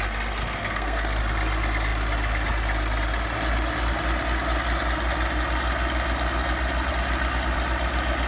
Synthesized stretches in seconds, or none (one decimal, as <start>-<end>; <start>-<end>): 0.4-1.2